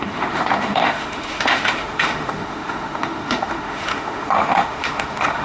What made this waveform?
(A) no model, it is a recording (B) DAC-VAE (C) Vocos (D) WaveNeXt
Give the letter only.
B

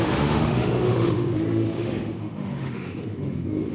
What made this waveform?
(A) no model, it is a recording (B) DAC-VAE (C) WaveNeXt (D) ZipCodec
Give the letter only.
B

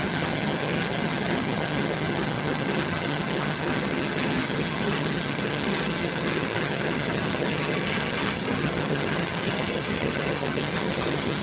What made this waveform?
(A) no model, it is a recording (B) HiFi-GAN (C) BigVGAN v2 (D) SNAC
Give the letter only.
B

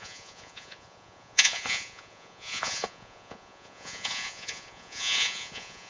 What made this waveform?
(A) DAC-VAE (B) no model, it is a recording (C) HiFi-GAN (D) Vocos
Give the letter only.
D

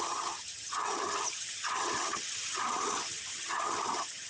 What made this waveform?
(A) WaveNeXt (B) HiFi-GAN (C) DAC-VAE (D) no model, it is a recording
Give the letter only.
B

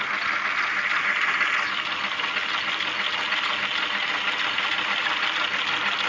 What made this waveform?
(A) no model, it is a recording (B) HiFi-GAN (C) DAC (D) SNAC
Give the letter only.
A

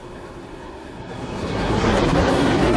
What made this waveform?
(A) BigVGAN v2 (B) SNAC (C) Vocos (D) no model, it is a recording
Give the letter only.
B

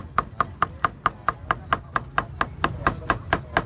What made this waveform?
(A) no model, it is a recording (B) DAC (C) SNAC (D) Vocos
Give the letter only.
A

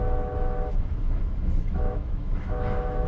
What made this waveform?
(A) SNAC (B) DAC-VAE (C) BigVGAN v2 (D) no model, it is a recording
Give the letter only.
B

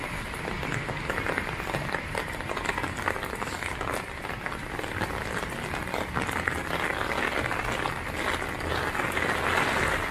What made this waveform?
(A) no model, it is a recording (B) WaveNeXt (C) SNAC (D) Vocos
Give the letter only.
A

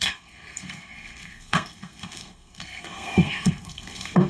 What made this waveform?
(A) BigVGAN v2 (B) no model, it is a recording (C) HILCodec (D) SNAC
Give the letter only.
D